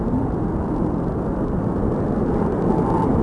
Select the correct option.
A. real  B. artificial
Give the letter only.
B